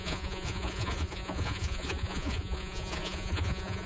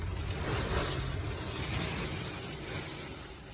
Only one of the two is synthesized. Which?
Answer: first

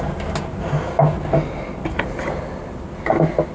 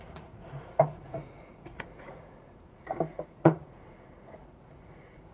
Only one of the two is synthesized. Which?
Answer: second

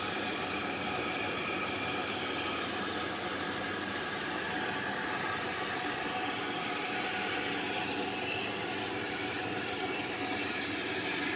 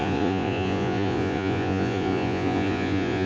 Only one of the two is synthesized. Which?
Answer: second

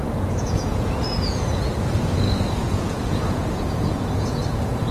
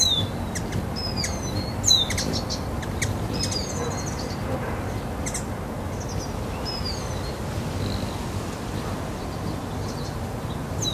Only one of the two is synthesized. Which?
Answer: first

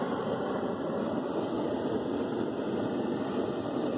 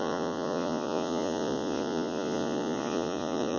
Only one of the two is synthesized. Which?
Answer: second